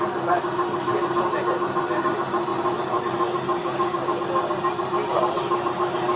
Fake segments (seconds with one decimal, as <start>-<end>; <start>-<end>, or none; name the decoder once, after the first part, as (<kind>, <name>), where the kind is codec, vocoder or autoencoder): 3.6-4.2 (codec, DAC)